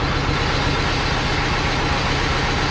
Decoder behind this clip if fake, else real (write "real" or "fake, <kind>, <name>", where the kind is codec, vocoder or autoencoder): real